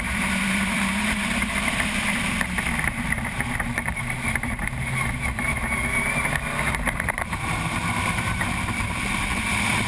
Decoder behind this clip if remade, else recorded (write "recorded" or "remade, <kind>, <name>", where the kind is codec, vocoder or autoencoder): remade, vocoder, BigVGAN v2